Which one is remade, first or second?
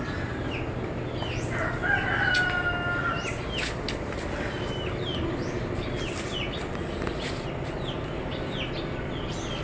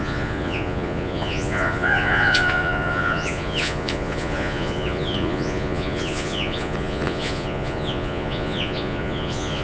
second